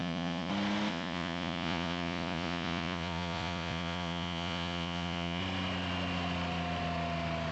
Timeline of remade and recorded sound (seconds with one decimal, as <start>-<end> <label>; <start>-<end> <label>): 0.0-0.5 remade; 0.5-0.9 recorded; 0.9-5.4 remade; 5.4-7.5 recorded